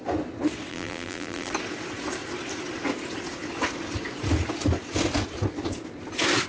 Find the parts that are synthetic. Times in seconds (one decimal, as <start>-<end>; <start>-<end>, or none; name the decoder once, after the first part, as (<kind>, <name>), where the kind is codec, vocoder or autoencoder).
0.7-1.5 (vocoder, BigVGAN v2)